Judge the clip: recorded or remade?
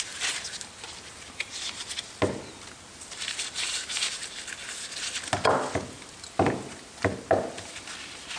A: recorded